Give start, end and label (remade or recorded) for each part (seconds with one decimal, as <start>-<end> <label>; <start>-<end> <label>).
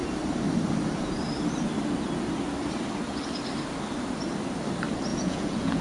0.0-5.1 recorded; 5.1-5.8 remade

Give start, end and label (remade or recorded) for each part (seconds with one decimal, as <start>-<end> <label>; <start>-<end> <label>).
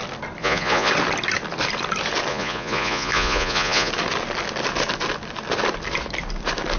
0.0-0.4 recorded; 0.4-0.9 remade; 0.9-2.3 recorded; 2.3-3.9 remade; 3.9-6.8 recorded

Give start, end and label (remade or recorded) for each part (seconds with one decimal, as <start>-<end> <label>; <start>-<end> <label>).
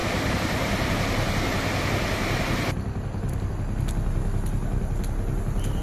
0.0-5.8 recorded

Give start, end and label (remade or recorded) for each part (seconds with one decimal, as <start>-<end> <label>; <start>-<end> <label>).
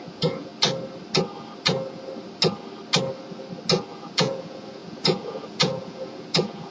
0.0-0.5 remade; 0.5-3.9 recorded; 3.9-6.7 remade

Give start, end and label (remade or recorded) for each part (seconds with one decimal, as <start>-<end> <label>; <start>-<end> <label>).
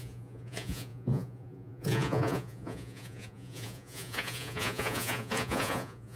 0.0-6.2 remade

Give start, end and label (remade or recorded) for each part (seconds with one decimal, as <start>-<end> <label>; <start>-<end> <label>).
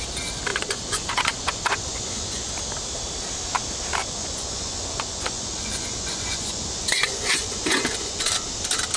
0.0-0.5 recorded; 0.5-2.5 remade; 2.5-4.0 recorded; 4.0-8.3 remade; 8.3-9.0 recorded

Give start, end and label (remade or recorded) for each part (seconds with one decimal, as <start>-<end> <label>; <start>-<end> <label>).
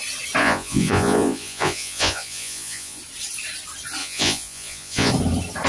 0.0-0.4 recorded; 0.4-3.0 remade; 3.0-4.0 recorded; 4.0-5.1 remade; 5.1-5.7 recorded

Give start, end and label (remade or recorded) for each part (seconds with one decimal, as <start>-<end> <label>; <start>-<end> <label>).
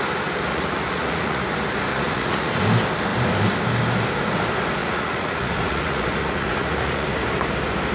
0.0-0.5 recorded; 0.5-1.4 remade; 1.4-1.9 recorded; 1.9-2.5 remade; 2.5-4.8 recorded; 4.8-7.1 remade; 7.1-7.9 recorded